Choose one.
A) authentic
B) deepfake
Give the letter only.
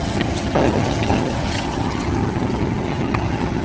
B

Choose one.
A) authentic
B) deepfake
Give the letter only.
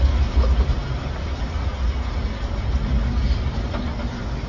A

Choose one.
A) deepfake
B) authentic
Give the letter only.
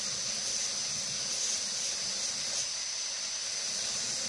B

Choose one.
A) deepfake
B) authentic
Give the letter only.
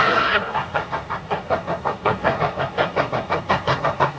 A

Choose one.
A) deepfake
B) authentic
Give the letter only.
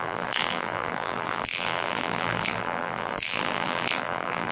A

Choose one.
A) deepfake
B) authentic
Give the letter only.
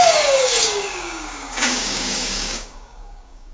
A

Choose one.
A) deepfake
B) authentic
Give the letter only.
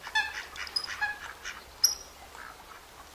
B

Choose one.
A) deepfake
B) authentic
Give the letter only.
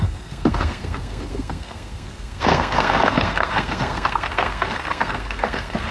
A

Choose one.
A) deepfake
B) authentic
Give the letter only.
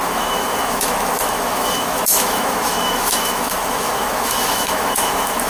A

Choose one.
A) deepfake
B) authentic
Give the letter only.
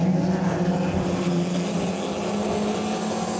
B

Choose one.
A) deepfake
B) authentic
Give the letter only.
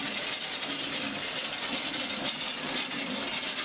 B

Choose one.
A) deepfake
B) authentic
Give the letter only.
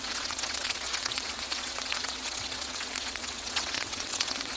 A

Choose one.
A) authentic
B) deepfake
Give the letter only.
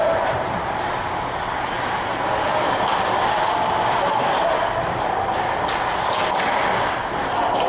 A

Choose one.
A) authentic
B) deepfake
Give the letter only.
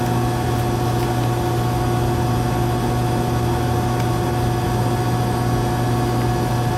A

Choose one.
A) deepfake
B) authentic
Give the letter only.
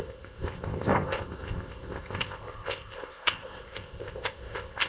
A